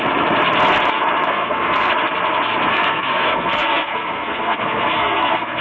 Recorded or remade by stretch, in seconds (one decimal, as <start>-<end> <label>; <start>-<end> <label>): 0.0-1.3 recorded; 1.3-1.9 remade; 1.9-2.7 recorded; 2.7-5.6 remade